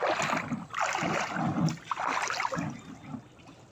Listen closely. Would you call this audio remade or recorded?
recorded